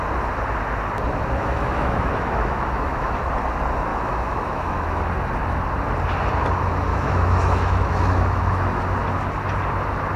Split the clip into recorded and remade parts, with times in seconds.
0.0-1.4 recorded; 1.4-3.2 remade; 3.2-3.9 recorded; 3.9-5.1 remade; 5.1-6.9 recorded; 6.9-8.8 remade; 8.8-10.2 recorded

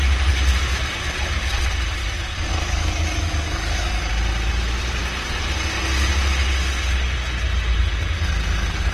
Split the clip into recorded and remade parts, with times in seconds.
0.0-2.0 recorded; 2.0-4.1 remade; 4.1-8.9 recorded

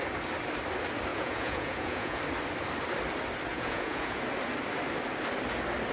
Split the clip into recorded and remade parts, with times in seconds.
0.0-1.1 recorded; 1.1-2.2 remade; 2.2-3.5 recorded; 3.5-4.2 remade; 4.2-5.9 recorded

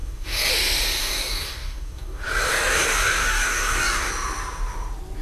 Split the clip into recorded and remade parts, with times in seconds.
0.0-0.5 remade; 0.5-1.0 recorded; 1.0-4.1 remade; 4.1-5.2 recorded

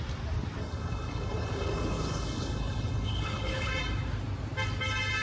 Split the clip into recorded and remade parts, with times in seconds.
0.0-0.6 recorded; 0.6-3.7 remade; 3.7-5.2 recorded

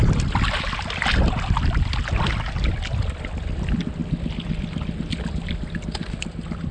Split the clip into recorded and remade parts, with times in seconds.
0.0-6.7 recorded

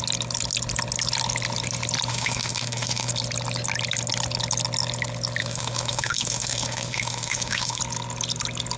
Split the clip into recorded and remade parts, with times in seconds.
0.0-2.1 recorded; 2.1-3.1 remade; 3.1-5.4 recorded; 5.4-7.8 remade; 7.8-8.8 recorded